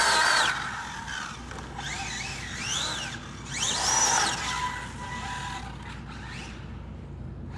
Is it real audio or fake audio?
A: real